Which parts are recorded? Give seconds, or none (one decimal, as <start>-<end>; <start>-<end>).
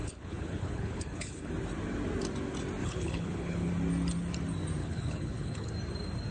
1.5-2.8; 3.7-4.8; 5.7-6.3